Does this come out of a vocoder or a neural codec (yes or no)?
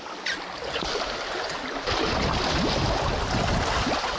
no